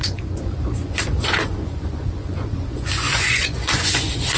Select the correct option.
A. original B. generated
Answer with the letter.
B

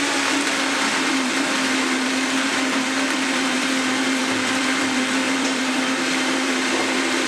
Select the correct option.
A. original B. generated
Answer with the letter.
B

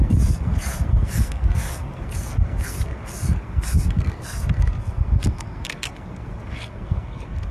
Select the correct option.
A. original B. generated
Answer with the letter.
B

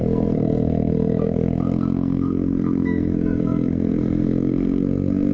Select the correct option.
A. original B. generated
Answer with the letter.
B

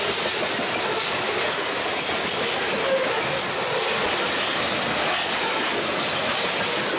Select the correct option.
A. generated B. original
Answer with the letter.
B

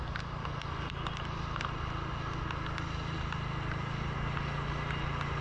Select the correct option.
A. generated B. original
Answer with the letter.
B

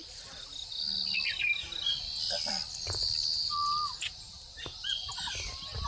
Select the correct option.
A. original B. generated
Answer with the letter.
A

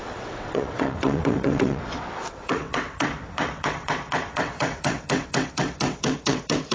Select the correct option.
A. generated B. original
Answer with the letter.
A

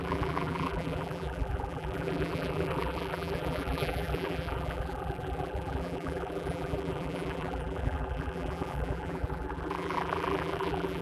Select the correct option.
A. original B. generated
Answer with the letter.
B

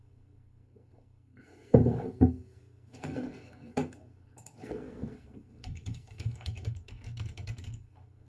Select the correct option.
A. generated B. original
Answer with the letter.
A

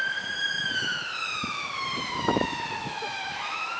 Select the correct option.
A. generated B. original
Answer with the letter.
A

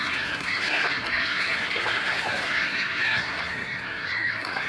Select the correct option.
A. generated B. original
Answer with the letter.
A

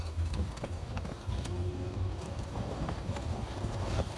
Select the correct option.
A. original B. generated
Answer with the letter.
B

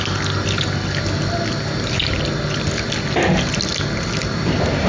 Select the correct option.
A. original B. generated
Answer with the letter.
A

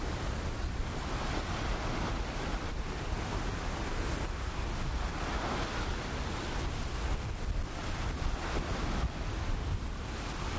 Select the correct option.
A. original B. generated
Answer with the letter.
A